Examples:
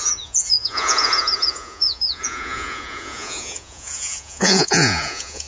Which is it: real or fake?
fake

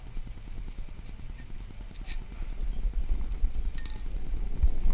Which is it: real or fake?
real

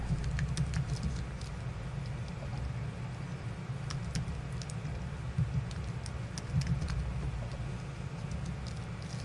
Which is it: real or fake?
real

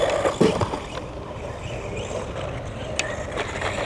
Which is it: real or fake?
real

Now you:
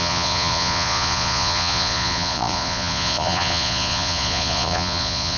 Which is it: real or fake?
fake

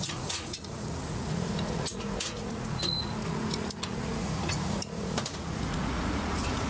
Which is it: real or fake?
fake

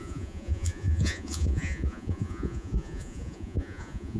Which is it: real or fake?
fake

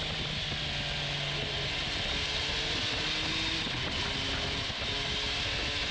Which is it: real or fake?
real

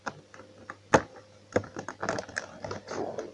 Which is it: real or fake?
real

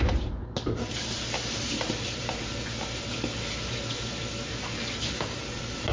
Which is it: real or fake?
real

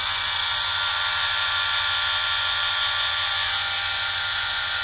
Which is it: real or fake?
fake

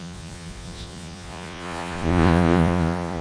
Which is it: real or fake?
fake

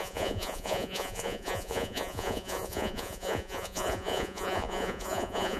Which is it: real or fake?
fake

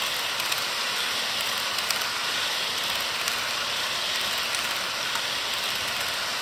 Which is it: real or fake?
real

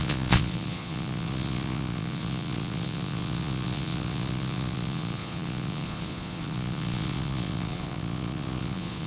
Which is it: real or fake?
fake